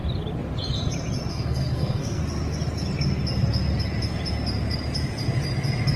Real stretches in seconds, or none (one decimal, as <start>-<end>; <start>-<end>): 0.0-1.3; 2.2-6.0